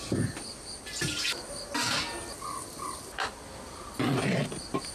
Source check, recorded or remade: recorded